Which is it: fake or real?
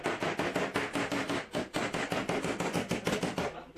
real